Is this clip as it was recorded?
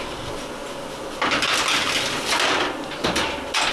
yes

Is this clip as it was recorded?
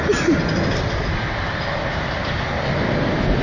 yes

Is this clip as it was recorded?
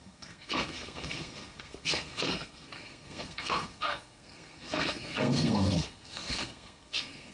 no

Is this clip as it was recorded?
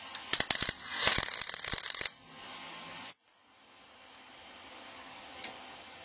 yes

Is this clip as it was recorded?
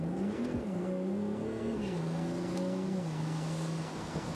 no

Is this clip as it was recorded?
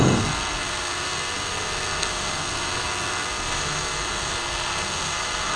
no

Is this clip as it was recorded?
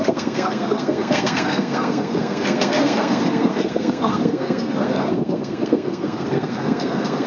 no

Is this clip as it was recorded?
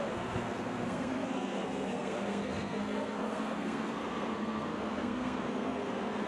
no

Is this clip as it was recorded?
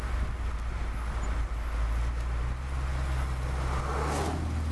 yes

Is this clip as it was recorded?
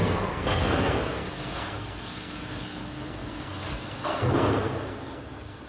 no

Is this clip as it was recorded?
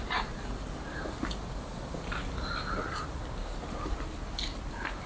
yes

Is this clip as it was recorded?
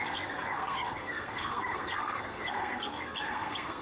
no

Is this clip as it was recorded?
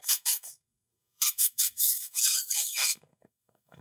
no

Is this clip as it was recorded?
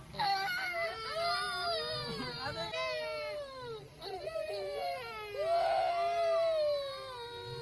yes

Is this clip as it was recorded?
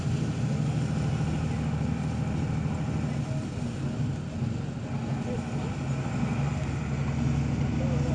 yes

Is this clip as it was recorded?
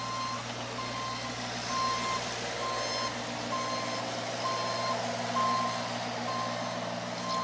yes